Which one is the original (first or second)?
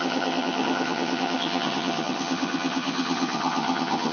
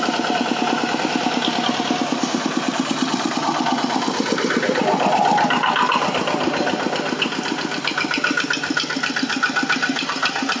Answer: second